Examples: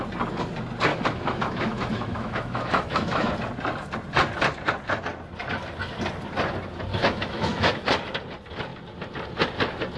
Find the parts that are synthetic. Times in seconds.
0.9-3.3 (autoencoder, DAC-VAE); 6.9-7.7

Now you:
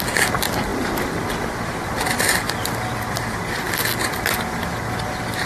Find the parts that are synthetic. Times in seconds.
none

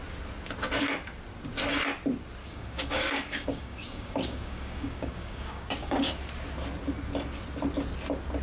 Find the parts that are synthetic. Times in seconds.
2.4-6.2 (codec, DAC)